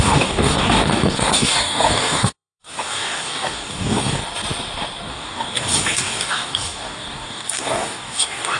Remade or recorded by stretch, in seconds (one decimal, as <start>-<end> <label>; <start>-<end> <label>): 0.0-4.2 remade; 4.2-5.1 recorded; 5.1-8.6 remade